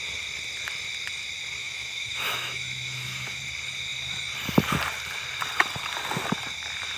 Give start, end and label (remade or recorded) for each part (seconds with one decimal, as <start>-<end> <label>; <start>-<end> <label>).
0.0-1.6 recorded; 1.6-3.4 remade; 3.4-7.0 recorded